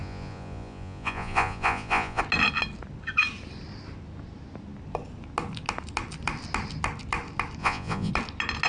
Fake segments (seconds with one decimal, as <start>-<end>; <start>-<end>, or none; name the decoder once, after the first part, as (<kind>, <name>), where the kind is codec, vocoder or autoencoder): 0.0-2.2 (vocoder, Vocos); 7.6-8.1